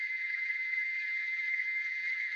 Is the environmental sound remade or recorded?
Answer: remade